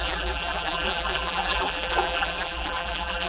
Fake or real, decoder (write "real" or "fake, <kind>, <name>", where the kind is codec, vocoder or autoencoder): fake, vocoder, BigVGAN v2